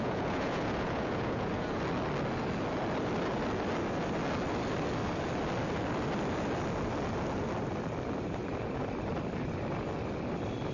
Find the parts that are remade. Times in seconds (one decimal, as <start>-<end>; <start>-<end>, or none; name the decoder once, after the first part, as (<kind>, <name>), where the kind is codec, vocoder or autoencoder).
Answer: 0.0-1.8 (vocoder, Vocos)